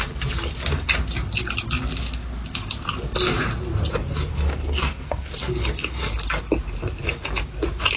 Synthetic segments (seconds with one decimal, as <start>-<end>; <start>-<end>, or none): 4.3-5.3